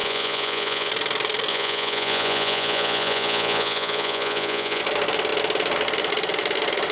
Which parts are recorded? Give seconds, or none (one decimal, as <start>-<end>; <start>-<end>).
0.9-1.5; 4.8-6.9

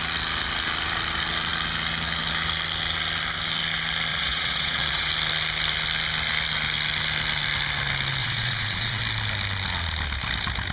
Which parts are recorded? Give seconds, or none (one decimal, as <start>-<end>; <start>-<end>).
0.0-4.1; 5.1-8.2; 9.0-10.7

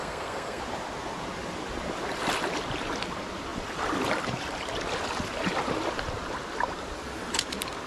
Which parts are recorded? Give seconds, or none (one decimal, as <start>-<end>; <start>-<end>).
0.6-7.9

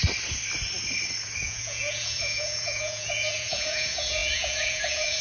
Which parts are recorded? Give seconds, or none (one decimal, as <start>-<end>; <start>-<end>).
0.0-1.4

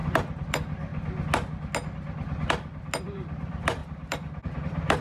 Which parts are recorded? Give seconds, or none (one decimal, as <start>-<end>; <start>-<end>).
0.9-3.0

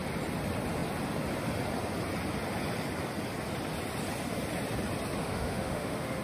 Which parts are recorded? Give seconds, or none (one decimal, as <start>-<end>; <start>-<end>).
0.0-5.2

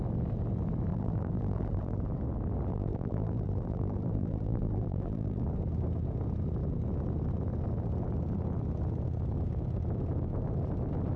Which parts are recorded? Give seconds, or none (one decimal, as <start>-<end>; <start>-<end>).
0.0-0.9; 2.0-2.7; 5.4-11.2